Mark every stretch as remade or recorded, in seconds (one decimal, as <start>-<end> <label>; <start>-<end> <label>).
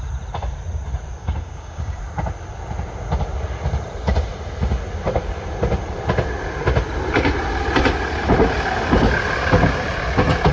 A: 0.0-1.2 recorded; 1.2-2.0 remade; 2.0-10.5 recorded